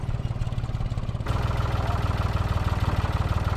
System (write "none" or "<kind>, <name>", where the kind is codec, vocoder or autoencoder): none